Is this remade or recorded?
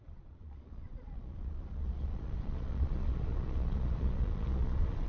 remade